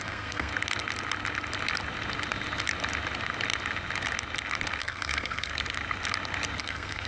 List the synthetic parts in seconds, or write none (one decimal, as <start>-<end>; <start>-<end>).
0.0-0.5; 4.8-5.5; 6.6-7.1